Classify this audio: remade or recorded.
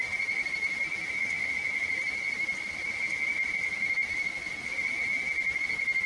recorded